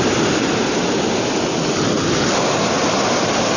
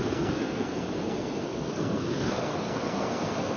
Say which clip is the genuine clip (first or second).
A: first